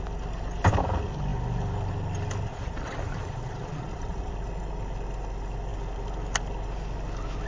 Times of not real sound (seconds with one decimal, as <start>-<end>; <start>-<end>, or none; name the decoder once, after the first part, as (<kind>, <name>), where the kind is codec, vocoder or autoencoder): 2.5-4.3 (vocoder, Vocos)